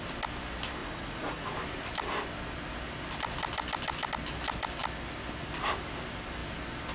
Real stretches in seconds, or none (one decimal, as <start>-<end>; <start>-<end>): 0.0-0.8; 1.5-6.9